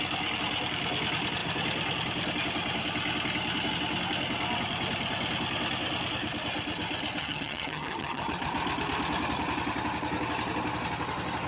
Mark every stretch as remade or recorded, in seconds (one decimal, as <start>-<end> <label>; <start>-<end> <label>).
0.0-7.2 recorded; 7.2-8.3 remade; 8.3-11.5 recorded